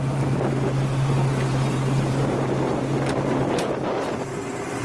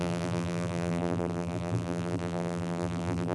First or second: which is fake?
second